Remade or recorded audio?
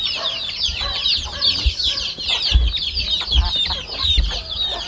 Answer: remade